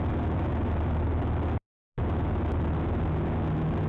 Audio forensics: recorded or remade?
recorded